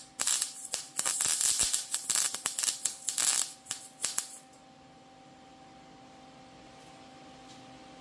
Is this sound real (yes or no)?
yes